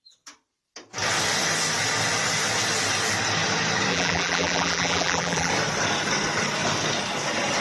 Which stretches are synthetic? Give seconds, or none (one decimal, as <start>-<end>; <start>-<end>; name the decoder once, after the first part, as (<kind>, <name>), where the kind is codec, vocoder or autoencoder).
3.9-5.5 (vocoder, BigVGAN v2)